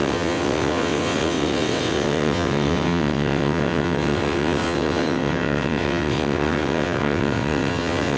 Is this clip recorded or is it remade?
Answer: remade